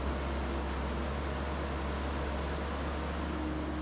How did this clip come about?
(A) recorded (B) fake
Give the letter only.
A